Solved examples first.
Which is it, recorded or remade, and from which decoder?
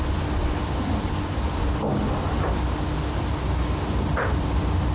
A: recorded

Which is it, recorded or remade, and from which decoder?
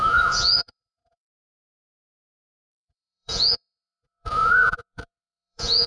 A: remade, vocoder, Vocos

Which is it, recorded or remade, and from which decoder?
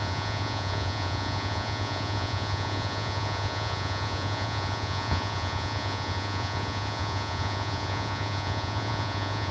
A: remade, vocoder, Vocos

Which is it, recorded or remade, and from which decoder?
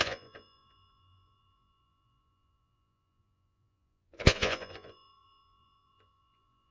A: remade, vocoder, Vocos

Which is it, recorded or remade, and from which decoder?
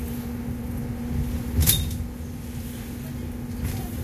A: recorded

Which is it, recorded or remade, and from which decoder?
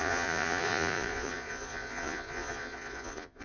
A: remade, vocoder, Vocos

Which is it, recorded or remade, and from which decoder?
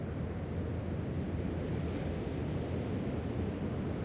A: recorded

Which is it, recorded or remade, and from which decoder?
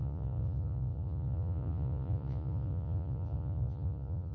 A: remade, vocoder, Vocos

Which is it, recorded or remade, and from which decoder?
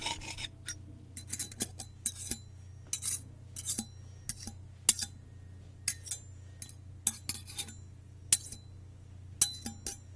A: recorded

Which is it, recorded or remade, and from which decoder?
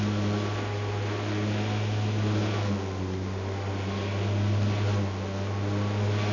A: recorded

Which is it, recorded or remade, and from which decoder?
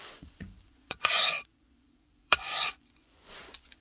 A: remade, vocoder, Vocos